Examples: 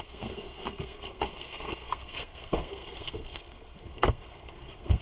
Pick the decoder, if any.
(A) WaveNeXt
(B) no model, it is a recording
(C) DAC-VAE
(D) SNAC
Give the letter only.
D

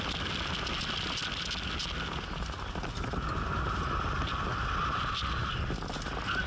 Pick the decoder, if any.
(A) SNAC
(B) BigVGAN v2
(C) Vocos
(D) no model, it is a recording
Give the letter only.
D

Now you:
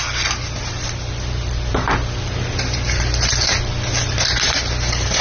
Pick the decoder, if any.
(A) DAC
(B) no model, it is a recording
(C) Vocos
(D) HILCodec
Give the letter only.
B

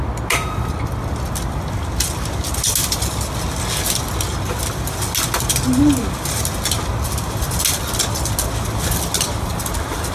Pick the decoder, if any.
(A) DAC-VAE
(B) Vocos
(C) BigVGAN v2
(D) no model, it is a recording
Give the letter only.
D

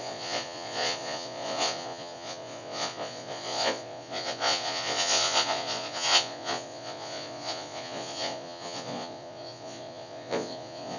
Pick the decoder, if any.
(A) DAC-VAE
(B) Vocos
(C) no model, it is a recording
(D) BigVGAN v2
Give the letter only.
B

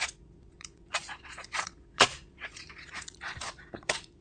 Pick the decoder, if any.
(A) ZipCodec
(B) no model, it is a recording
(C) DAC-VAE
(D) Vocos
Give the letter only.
D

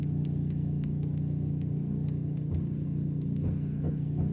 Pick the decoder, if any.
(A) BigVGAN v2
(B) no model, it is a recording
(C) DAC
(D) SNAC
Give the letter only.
D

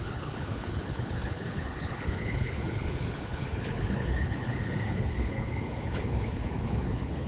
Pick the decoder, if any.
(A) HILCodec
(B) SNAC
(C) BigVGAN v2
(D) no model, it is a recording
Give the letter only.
A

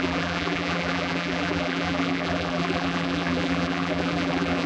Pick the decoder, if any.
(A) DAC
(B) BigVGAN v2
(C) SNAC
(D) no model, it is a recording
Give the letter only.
B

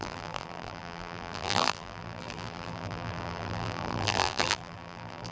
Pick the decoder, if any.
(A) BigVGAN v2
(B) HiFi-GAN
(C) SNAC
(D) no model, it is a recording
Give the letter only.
A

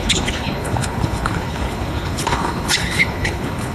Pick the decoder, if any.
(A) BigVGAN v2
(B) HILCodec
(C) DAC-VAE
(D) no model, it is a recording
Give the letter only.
B